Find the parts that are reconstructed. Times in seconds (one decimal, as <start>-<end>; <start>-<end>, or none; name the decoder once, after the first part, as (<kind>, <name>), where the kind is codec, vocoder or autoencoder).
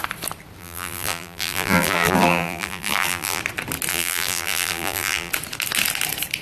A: 0.6-3.4 (vocoder, BigVGAN v2); 3.9-5.3